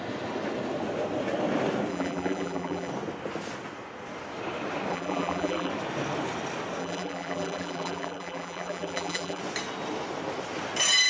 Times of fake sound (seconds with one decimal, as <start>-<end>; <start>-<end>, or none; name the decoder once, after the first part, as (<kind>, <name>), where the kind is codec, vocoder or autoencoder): 1.9-2.9 (vocoder, BigVGAN v2); 4.9-5.7; 6.8-9.4